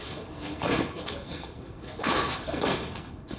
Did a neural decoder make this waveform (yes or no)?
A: yes